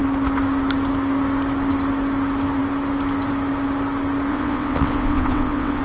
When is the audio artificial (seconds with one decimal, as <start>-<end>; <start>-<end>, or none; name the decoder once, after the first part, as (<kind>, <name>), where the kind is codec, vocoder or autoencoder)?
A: 4.3-5.8 (vocoder, WaveNeXt)